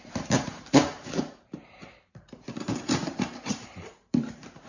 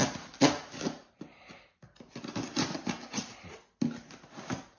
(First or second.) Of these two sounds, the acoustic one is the second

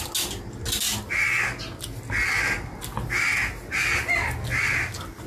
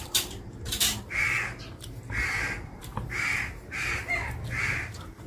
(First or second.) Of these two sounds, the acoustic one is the first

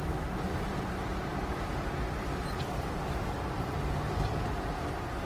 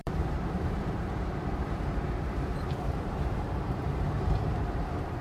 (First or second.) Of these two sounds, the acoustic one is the first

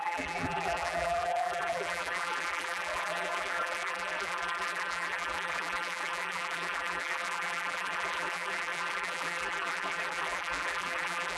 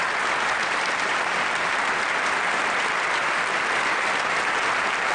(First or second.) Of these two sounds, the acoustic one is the second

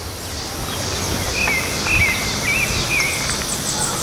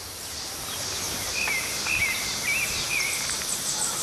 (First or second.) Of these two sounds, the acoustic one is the first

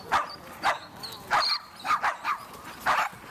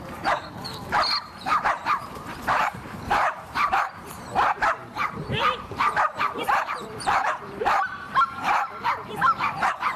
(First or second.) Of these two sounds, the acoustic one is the first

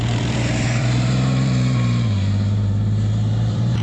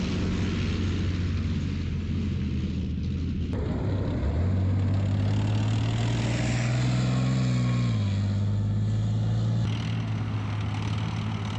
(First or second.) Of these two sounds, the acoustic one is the second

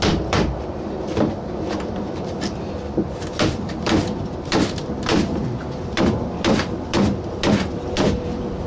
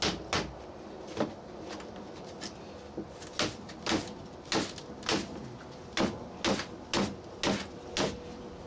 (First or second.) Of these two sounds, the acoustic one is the second